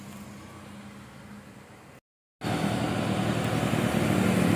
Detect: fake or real real